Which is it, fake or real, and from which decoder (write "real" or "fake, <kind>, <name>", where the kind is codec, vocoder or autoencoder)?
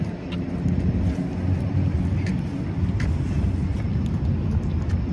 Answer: real